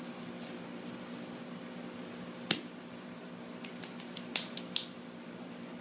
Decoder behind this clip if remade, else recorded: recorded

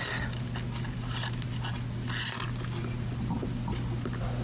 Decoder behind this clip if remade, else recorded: recorded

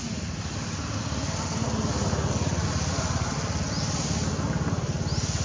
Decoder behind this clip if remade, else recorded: recorded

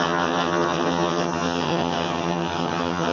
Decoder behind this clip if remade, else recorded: remade, vocoder, HiFi-GAN